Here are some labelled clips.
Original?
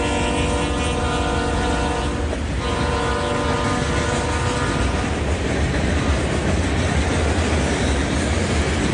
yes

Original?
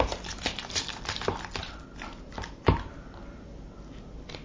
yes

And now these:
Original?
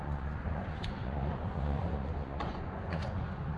no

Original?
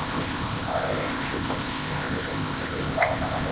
no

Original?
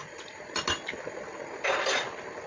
yes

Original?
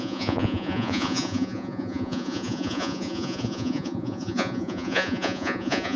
no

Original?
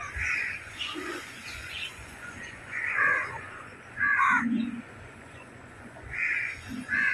no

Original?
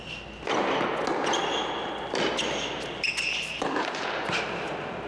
yes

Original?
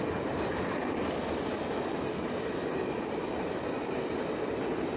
yes